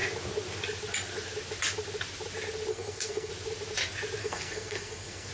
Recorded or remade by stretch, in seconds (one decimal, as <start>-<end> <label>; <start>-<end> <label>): 0.0-2.7 recorded; 2.7-3.3 remade; 3.3-4.2 recorded; 4.2-5.3 remade

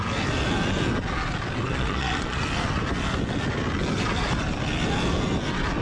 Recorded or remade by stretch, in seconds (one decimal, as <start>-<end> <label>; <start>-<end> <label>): 0.0-1.7 recorded; 1.7-2.4 remade; 2.4-5.8 recorded

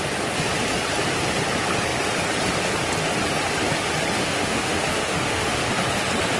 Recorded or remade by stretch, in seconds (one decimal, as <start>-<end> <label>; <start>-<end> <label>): 0.0-4.2 recorded; 4.2-5.7 remade; 5.7-6.4 recorded

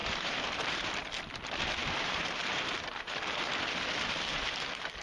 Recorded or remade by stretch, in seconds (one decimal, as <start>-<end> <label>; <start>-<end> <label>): 0.0-0.9 remade; 0.9-1.8 recorded; 1.8-3.4 remade; 3.4-5.0 recorded

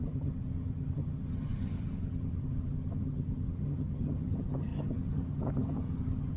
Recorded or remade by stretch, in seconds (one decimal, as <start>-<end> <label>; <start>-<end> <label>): 0.0-6.4 remade

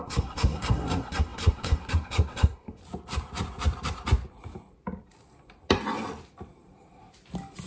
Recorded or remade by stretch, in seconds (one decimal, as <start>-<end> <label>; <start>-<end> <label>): 0.0-2.8 remade; 2.8-7.7 recorded

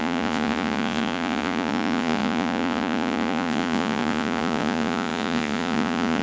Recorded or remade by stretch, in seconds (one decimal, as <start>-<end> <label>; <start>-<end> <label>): 0.0-6.2 remade